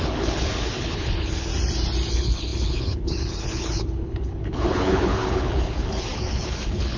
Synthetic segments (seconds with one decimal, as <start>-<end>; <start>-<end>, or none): 0.0-1.5; 2.1-7.0